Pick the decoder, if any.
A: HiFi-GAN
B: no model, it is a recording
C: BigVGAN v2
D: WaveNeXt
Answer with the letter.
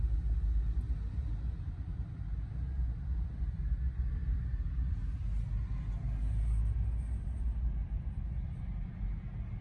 B